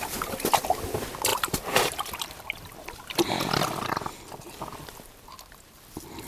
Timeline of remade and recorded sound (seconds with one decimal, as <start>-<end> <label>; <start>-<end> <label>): 0.0-1.3 recorded; 1.3-5.1 remade; 5.1-6.3 recorded